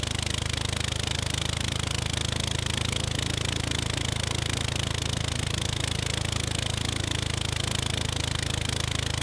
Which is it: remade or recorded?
recorded